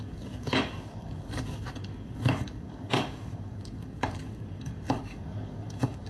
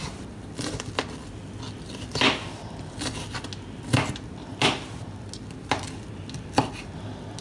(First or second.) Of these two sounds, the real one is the second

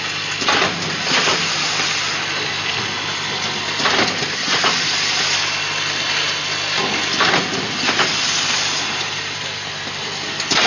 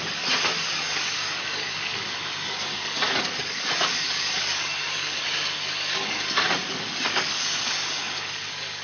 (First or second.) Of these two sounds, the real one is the first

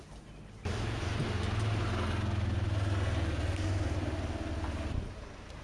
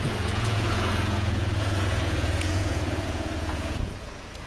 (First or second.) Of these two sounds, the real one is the first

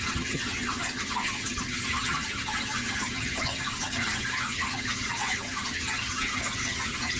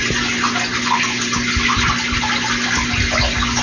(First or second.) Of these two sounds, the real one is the second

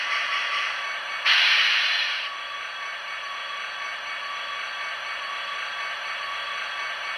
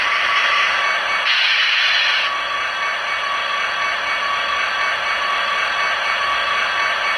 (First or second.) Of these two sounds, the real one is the second